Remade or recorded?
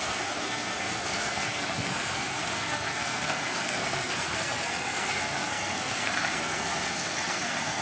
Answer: remade